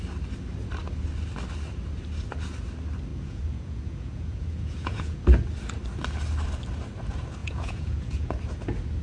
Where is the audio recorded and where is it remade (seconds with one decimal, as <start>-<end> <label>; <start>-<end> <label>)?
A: 0.0-3.1 recorded; 3.1-5.2 remade; 5.2-7.4 recorded; 7.4-8.3 remade; 8.3-9.0 recorded